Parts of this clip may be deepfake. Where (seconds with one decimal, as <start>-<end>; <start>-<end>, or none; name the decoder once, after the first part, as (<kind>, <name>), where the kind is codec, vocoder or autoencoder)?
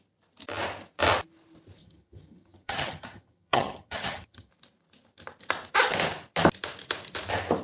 1.8-4.5 (vocoder, HiFi-GAN)